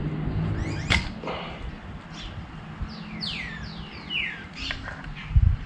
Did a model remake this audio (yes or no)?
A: no